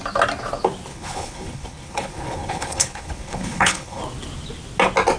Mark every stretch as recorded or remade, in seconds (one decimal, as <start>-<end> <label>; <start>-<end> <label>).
0.0-0.9 recorded; 0.9-4.0 remade; 4.0-5.2 recorded